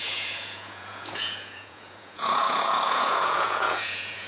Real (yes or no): no